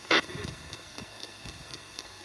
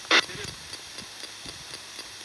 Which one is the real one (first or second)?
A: second